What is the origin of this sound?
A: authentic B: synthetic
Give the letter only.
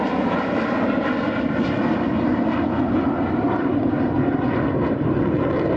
A